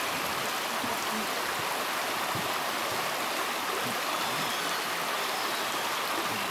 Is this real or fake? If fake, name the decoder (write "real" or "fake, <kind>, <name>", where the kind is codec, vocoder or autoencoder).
real